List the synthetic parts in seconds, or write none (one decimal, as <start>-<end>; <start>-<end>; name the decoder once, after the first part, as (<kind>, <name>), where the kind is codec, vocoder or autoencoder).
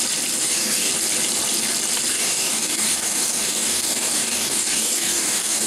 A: 0.4-0.9 (codec, DAC); 2.1-5.7